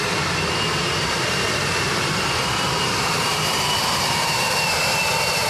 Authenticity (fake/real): fake